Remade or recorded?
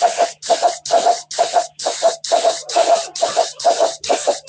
recorded